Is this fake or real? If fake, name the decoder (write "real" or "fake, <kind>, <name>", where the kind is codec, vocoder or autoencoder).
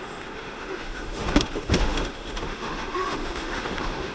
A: fake, autoencoder, DAC-VAE